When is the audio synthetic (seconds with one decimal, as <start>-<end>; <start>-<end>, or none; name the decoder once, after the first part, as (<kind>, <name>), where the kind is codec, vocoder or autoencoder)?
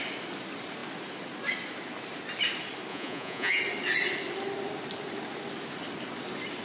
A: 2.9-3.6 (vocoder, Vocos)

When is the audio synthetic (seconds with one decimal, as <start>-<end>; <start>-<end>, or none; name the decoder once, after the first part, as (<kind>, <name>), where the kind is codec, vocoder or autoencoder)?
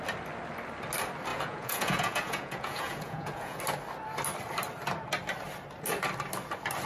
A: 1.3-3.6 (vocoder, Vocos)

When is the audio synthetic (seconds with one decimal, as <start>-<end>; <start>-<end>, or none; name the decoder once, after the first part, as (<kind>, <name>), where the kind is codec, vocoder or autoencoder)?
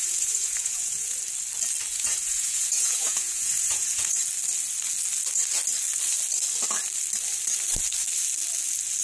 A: 0.0-1.2 (vocoder, Vocos); 1.9-4.2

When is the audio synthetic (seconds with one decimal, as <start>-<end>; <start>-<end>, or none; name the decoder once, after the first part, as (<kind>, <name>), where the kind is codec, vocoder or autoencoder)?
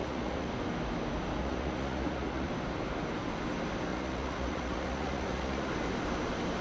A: 0.0-0.5 (vocoder, Vocos); 1.4-2.5; 3.9-5.7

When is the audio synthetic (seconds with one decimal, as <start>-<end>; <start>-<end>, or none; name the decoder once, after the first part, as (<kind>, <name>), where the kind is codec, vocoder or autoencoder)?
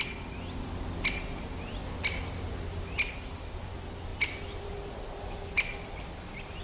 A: none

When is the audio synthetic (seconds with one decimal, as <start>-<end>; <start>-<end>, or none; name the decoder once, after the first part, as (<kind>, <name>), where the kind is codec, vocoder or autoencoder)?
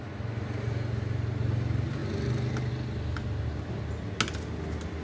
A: none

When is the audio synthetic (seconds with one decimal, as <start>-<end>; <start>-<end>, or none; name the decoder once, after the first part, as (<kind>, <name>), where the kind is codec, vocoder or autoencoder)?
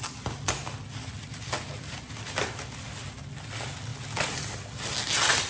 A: none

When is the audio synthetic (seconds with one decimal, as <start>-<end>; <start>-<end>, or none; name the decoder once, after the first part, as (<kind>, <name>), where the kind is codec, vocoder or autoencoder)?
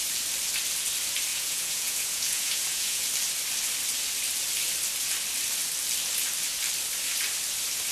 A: 1.3-3.1 (vocoder, Vocos)